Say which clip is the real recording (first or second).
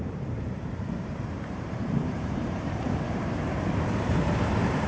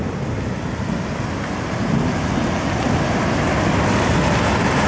second